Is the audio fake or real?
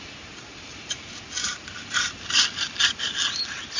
real